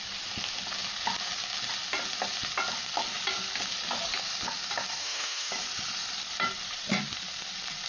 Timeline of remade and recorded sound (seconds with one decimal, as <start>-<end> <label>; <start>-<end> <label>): 0.0-5.0 recorded; 5.0-5.5 remade; 5.5-7.9 recorded